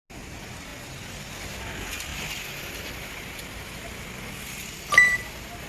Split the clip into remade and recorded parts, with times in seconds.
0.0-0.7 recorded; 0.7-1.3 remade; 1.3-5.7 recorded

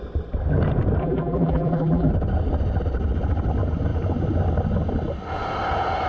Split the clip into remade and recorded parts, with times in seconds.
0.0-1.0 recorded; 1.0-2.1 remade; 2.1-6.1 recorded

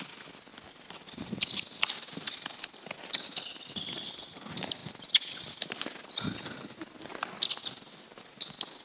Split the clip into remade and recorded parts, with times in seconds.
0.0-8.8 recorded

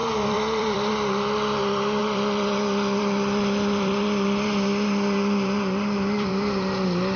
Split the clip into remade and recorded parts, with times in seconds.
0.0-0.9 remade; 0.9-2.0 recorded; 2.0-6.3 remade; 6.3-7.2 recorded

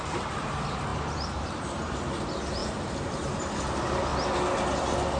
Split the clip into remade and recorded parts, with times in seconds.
0.0-4.1 remade; 4.1-5.2 recorded

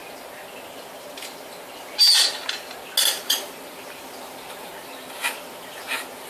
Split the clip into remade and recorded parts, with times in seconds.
0.0-3.1 recorded; 3.1-6.3 remade

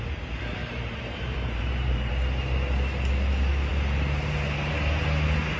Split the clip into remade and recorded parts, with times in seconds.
0.0-0.6 recorded; 0.6-2.1 remade; 2.1-5.6 recorded